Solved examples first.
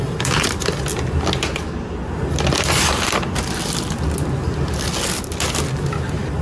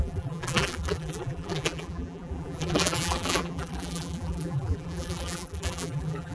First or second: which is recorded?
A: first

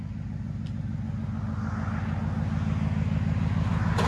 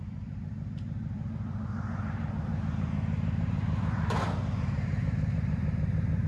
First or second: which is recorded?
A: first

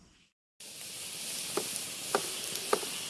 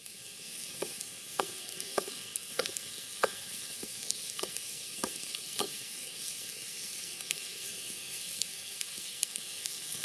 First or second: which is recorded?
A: first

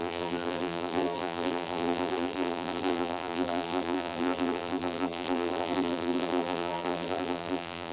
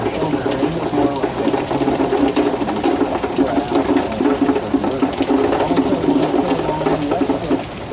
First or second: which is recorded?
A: second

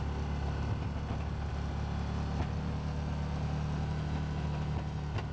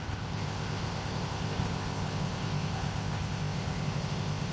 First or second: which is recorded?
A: first